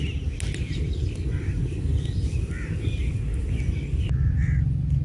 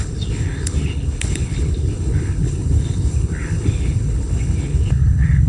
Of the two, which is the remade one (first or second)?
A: second